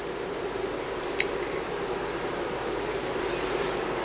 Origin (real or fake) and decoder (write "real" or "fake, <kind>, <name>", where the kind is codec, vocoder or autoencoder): real